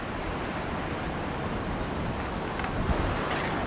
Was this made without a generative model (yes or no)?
yes